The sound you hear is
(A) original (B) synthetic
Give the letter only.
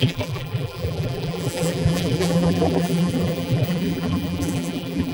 B